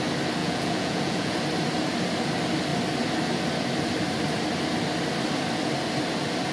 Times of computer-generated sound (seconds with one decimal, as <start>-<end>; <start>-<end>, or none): 0.4-1.4